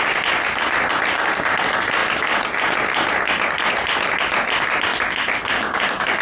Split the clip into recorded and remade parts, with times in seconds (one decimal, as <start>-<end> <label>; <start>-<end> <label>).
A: 0.0-6.2 recorded